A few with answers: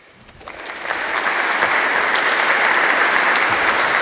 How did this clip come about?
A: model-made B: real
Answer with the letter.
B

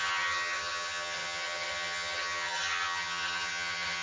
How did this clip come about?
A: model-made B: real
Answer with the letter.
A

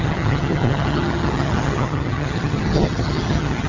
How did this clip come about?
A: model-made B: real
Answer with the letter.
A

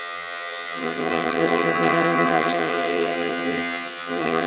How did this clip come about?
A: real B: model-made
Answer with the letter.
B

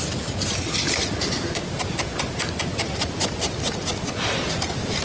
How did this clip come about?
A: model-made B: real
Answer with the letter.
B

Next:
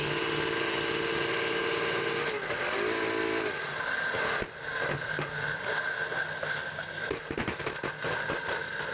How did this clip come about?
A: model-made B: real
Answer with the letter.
B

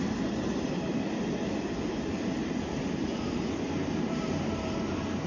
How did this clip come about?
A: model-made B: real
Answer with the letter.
B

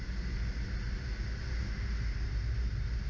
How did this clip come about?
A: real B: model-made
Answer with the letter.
A